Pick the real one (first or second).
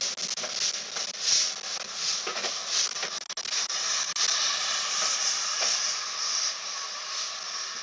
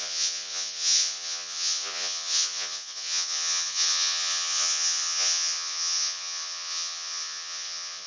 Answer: first